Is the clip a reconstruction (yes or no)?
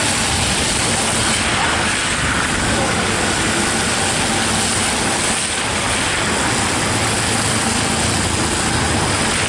no